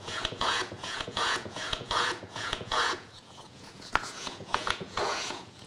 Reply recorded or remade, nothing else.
remade